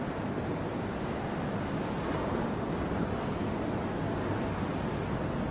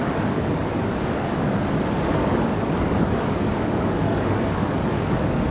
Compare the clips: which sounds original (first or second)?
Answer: first